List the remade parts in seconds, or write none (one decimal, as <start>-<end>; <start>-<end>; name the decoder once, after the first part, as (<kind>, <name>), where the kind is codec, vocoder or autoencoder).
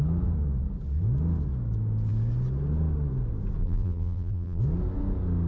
3.6-4.6 (vocoder, BigVGAN v2)